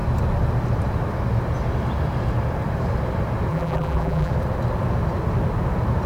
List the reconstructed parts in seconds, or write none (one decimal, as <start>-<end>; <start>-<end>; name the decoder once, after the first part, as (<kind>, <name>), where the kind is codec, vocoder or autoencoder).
3.5-4.3 (vocoder, BigVGAN v2)